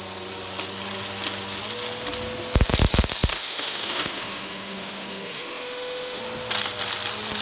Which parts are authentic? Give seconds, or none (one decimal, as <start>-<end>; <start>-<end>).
0.0-3.3; 6.2-7.4

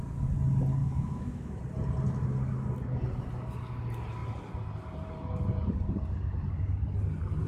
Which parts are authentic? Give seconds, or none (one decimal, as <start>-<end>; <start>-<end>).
0.0-0.8; 1.6-7.5

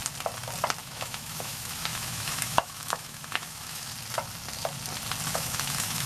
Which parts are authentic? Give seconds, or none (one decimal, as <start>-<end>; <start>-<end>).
0.0-0.8; 3.9-5.3

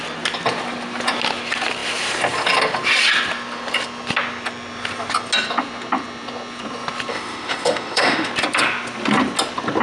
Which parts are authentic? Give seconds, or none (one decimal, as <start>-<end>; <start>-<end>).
0.0-7.1; 8.3-9.8